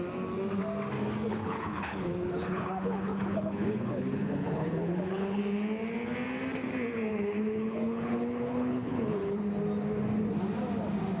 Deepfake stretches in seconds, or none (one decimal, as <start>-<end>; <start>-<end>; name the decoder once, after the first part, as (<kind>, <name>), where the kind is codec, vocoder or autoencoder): 1.3-5.4 (codec, HILCodec); 7.1-9.4